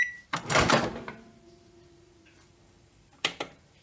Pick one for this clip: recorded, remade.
remade